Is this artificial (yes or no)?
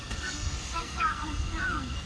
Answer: yes